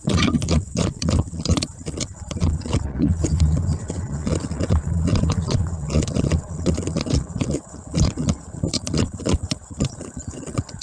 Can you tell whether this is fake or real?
fake